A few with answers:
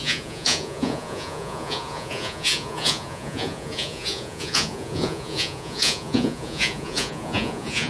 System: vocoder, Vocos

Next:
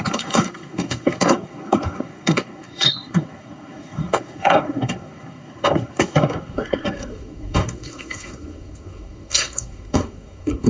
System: codec, SNAC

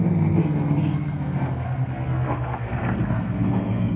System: codec, SNAC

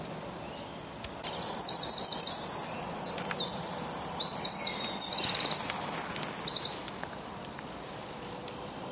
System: none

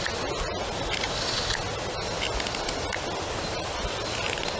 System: none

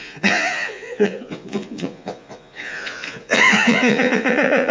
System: vocoder, Vocos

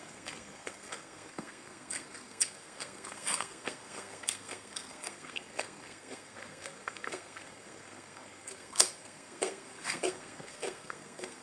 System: codec, SNAC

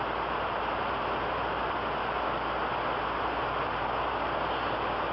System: none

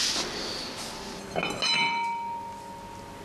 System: none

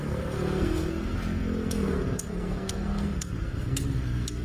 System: codec, SNAC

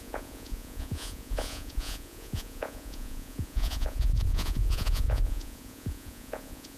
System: vocoder, Vocos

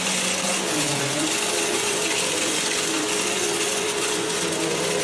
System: vocoder, Vocos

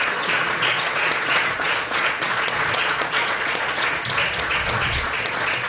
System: vocoder, Vocos